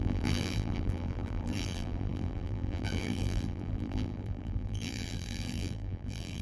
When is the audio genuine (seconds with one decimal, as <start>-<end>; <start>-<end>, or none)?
none